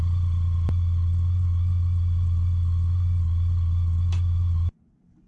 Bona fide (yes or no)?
yes